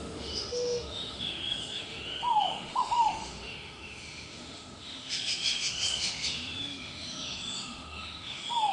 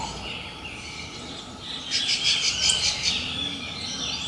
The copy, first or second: first